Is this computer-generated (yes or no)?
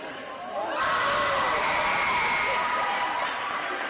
yes